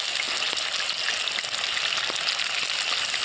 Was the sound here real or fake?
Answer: real